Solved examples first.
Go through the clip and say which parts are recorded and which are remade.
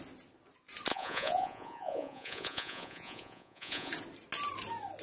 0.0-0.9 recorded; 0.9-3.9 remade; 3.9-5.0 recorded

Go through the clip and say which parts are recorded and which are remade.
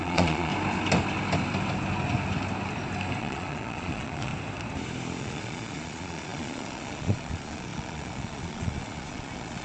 0.0-0.5 remade; 0.5-3.2 recorded; 3.2-4.3 remade; 4.3-5.2 recorded; 5.2-9.6 remade